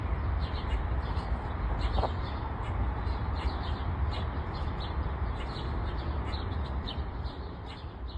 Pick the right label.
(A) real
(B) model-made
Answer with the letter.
B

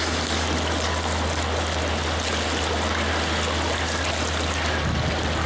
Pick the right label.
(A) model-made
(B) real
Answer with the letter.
B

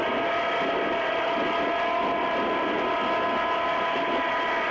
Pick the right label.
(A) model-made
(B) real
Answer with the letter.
B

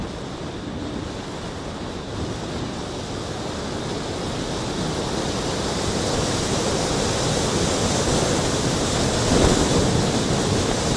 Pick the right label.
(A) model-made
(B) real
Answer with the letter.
B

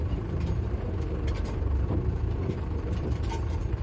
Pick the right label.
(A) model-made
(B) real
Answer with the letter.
A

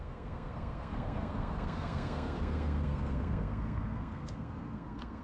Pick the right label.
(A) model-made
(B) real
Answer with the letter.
A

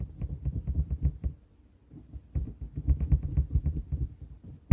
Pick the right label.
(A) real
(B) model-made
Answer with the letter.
A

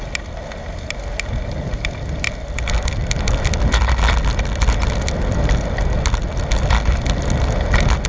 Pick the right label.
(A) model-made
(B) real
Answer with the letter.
B